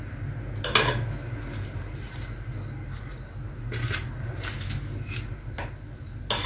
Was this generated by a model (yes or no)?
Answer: no